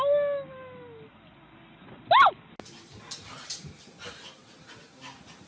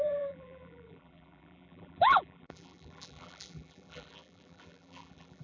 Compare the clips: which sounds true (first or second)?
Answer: first